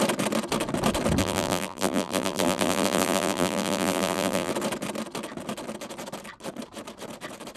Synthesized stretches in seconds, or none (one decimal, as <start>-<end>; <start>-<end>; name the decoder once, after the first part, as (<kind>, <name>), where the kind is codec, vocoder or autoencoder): 1.2-4.5 (vocoder, BigVGAN v2)